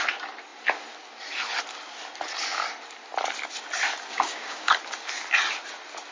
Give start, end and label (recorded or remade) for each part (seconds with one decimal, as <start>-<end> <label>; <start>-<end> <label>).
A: 0.0-4.1 recorded; 4.1-4.7 remade; 4.7-6.1 recorded